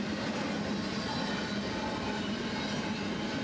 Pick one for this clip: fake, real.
real